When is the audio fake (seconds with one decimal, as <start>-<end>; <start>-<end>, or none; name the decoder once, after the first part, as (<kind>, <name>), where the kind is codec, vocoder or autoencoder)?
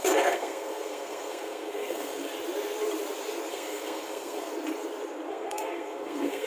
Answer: 0.0-2.3 (codec, SNAC); 3.5-4.5; 5.3-6.5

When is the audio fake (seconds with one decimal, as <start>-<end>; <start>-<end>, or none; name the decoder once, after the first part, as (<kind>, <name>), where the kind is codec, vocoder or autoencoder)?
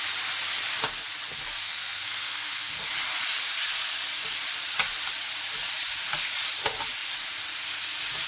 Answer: 1.6-2.8 (codec, SNAC)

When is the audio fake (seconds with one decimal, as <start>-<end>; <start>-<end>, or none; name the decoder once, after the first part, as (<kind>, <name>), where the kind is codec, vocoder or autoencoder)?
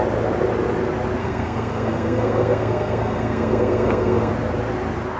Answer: 1.2-4.3 (codec, SNAC)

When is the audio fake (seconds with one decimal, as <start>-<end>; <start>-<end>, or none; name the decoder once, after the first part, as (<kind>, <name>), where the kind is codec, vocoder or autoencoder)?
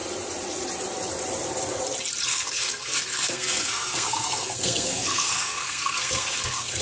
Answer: 2.3-6.8 (codec, SNAC)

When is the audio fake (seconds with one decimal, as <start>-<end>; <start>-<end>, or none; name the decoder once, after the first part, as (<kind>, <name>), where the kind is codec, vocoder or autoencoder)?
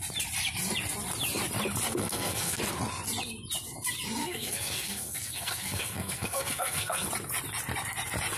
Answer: 2.0-2.6 (codec, SNAC); 4.2-7.1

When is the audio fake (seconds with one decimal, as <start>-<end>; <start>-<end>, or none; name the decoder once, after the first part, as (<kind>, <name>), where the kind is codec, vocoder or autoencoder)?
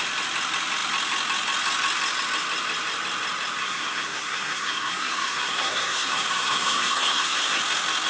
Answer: 3.6-7.6 (codec, SNAC)